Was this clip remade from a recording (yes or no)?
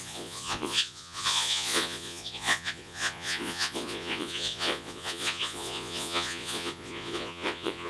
yes